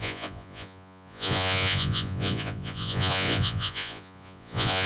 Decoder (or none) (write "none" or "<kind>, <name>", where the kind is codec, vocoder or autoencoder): vocoder, Vocos